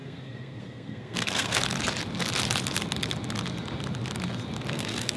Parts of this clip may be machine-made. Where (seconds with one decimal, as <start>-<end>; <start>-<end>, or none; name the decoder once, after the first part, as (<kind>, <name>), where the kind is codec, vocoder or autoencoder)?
0.0-1.6 (codec, SNAC); 4.7-5.2